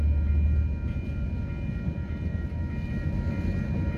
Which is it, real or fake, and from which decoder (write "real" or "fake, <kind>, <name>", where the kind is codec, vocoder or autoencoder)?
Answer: real